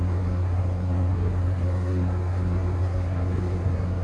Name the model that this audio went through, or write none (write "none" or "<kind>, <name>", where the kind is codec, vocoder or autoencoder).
codec, SNAC